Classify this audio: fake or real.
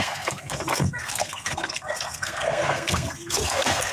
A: fake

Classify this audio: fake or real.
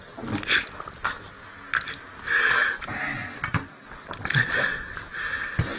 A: real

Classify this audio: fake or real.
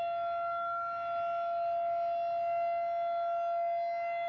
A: real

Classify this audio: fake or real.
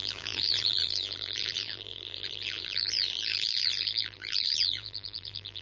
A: fake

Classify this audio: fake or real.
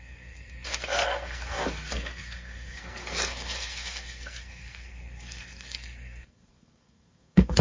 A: fake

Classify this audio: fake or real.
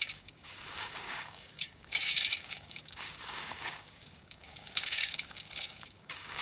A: fake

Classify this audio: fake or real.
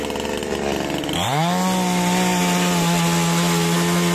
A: real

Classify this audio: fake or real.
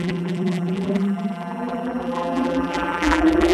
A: fake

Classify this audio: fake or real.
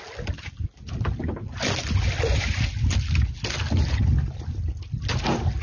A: real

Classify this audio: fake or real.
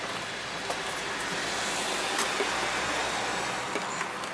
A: real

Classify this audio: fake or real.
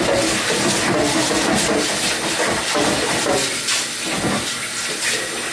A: real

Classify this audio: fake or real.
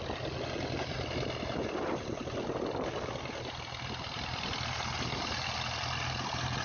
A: real